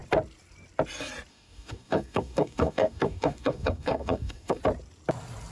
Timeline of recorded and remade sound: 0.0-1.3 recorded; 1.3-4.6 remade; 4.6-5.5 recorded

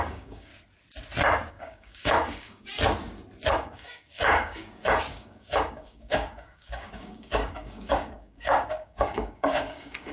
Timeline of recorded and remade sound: 0.0-0.5 remade; 0.5-1.5 recorded; 1.5-2.7 remade; 2.7-3.5 recorded; 3.5-10.1 remade